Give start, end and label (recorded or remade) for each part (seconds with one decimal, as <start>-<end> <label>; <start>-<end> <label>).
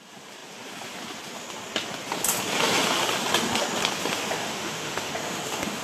0.0-4.4 recorded; 4.4-5.8 remade